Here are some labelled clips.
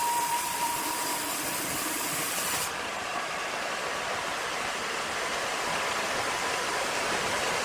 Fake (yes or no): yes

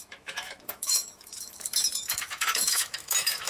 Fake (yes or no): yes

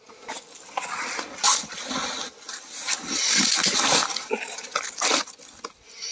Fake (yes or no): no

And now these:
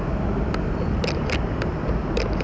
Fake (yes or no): no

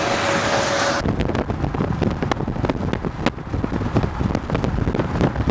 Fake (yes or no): no